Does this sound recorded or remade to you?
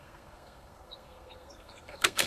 remade